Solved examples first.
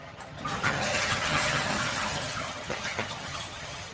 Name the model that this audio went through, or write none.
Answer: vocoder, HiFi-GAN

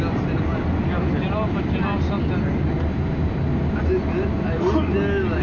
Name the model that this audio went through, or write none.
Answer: none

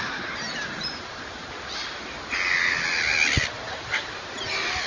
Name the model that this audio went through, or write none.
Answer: none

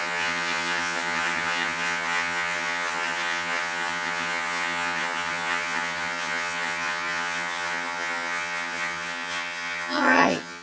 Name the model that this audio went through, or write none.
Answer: vocoder, HiFi-GAN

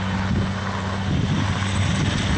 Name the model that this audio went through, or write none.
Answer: none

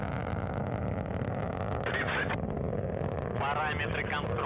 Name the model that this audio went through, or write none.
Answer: none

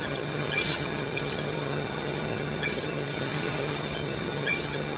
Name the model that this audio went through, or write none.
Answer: vocoder, HiFi-GAN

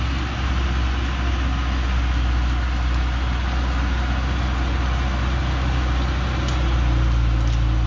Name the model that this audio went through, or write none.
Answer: none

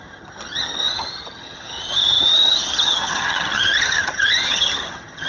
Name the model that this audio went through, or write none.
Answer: vocoder, HiFi-GAN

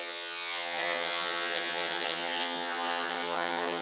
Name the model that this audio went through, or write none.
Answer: vocoder, HiFi-GAN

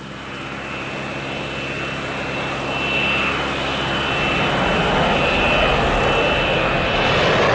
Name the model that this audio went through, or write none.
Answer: none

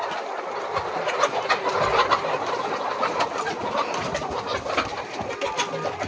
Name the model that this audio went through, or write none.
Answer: none